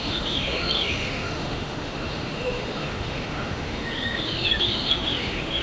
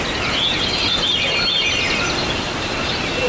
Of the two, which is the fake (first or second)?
first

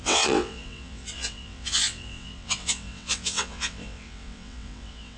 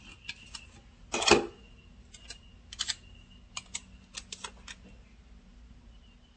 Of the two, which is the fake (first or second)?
first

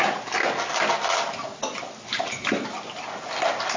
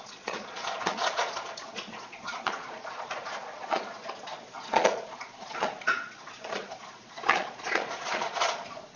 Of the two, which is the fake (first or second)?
second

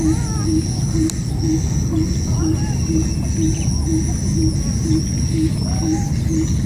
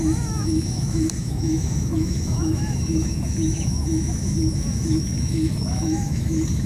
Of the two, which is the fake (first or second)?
second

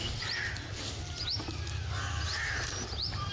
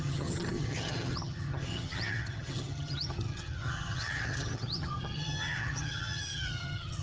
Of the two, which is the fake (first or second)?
second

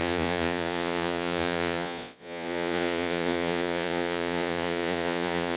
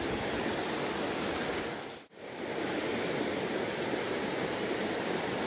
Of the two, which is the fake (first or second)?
first